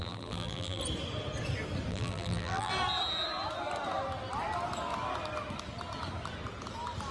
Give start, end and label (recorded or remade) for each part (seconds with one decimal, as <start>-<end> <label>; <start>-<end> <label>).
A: 0.0-0.8 remade; 0.8-1.9 recorded; 1.9-2.7 remade; 2.7-7.1 recorded